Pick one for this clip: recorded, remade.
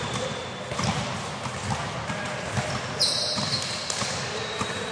recorded